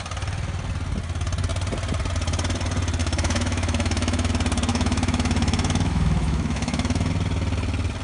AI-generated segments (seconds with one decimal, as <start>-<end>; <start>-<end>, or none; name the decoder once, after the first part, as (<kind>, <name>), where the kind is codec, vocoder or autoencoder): 3.0-4.3 (autoencoder, DAC-VAE); 4.7-7.1